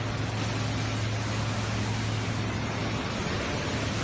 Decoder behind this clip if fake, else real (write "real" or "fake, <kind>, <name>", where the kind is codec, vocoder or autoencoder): real